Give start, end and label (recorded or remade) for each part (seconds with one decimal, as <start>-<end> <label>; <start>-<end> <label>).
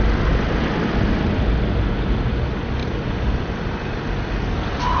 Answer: 0.0-5.0 recorded